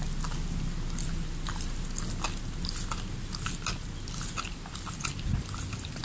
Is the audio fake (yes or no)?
no